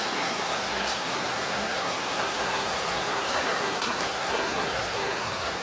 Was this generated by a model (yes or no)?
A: yes